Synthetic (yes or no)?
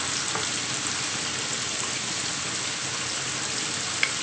no